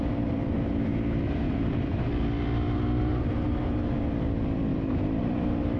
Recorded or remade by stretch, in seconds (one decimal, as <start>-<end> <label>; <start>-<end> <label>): 0.0-1.9 remade; 1.9-3.9 recorded; 3.9-5.8 remade